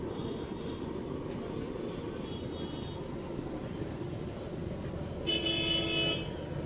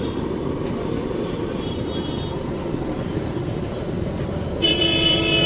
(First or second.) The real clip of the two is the first